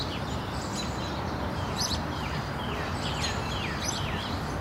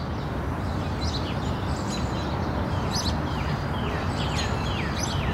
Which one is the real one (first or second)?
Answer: second